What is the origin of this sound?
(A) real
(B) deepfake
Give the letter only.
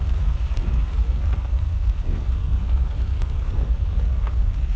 B